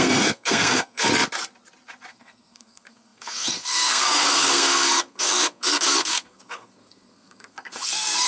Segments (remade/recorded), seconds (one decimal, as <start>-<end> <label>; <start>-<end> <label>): 0.0-1.1 remade; 1.1-2.1 recorded; 2.1-8.3 remade